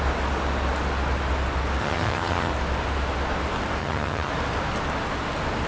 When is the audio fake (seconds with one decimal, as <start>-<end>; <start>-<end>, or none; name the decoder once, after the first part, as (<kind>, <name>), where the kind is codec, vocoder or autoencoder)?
1.8-2.5 (vocoder, HiFi-GAN); 3.8-4.3